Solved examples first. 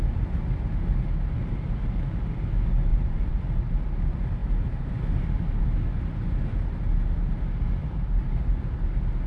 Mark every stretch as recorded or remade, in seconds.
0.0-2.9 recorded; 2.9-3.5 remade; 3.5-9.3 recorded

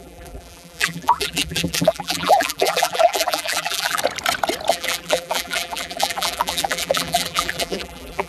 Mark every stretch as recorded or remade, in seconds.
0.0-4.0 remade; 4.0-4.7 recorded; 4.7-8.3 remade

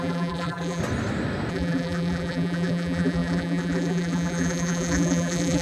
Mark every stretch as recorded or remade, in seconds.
0.0-0.8 remade; 0.8-1.5 recorded; 1.5-5.6 remade